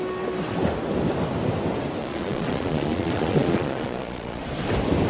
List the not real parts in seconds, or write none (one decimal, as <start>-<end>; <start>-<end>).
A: 2.0-4.4